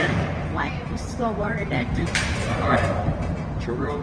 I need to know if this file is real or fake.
real